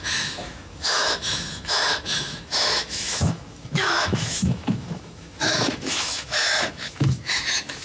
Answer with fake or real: fake